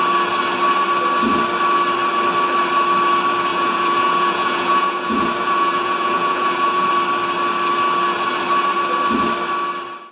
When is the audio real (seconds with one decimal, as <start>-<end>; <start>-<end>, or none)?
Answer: 0.0-3.5; 6.9-10.1